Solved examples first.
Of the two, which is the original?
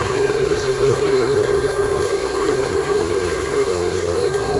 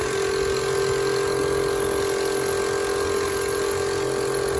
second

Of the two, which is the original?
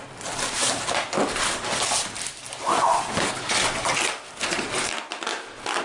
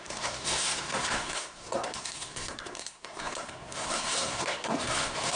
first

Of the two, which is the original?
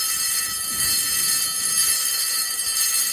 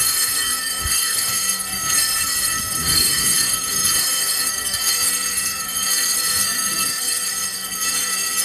first